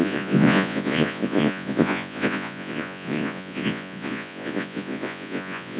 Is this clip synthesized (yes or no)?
yes